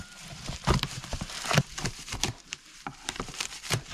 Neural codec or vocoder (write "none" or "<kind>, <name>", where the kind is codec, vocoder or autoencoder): vocoder, BigVGAN v2